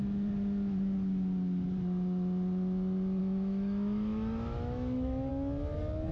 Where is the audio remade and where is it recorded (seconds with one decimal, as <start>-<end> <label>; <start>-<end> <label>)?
0.0-3.2 recorded; 3.2-5.3 remade; 5.3-6.1 recorded